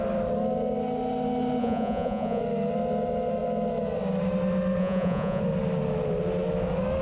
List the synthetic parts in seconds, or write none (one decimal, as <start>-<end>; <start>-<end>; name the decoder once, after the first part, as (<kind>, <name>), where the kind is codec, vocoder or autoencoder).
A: 1.6-2.4 (vocoder, Vocos); 4.8-5.4